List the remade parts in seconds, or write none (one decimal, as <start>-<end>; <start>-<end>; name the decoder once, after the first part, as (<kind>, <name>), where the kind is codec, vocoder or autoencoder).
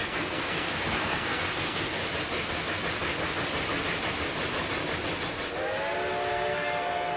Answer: 0.0-2.0 (codec, SNAC); 6.3-7.2